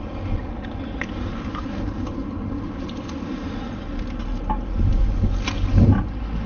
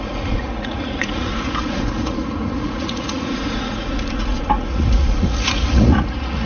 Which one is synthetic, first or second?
second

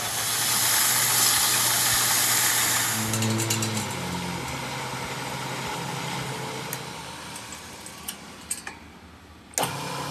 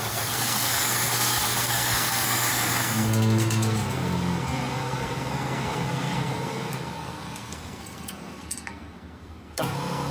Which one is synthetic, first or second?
second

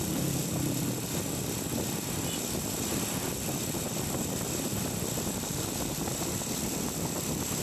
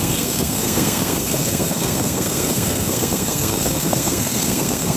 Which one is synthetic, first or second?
second